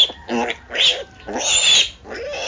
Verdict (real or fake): real